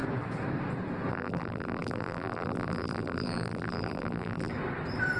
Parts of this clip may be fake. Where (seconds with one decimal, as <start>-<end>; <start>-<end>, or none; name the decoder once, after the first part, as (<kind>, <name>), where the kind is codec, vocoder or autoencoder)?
1.1-4.5 (vocoder, BigVGAN v2)